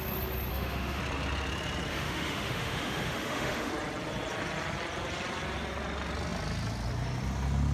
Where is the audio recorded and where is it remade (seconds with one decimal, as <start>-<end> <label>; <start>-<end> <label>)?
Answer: 0.0-0.5 recorded; 0.5-1.0 remade; 1.0-1.9 recorded; 1.9-3.7 remade; 3.7-7.7 recorded